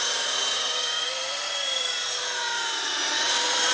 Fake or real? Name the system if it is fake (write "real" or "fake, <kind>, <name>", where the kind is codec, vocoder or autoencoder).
fake, vocoder, BigVGAN v2